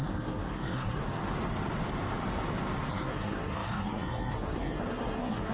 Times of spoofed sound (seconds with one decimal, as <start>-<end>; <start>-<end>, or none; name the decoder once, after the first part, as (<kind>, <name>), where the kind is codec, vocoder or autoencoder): 0.0-1.0 (codec, SNAC); 2.9-5.5